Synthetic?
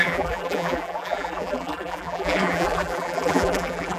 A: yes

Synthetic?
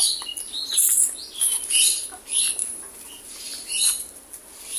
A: no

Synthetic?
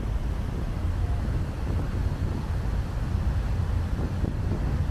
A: no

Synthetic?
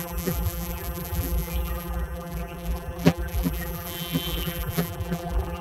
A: yes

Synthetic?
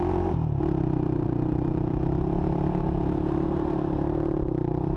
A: yes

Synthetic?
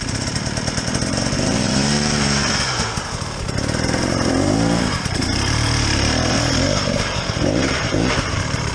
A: yes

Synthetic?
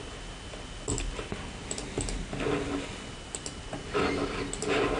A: no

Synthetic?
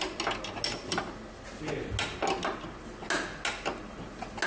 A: no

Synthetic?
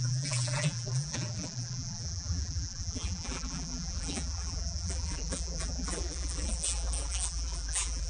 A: yes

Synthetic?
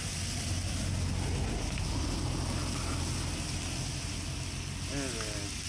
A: no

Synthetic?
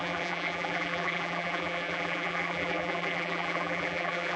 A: yes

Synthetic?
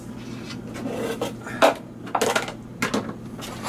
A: no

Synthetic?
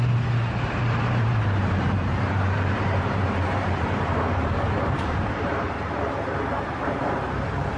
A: yes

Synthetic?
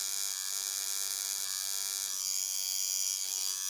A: no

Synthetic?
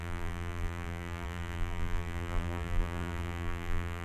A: yes